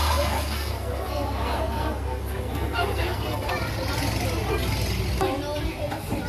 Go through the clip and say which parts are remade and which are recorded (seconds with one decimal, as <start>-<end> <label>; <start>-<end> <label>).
0.0-3.5 remade; 3.5-6.3 recorded